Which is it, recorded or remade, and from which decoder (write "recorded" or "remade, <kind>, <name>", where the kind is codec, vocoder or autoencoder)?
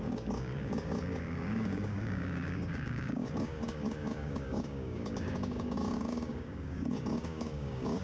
remade, codec, DAC